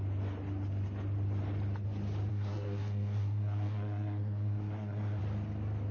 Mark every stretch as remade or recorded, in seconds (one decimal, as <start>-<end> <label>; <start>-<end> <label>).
0.0-2.3 recorded; 2.3-5.2 remade; 5.2-5.9 recorded